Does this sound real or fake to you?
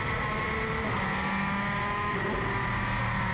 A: real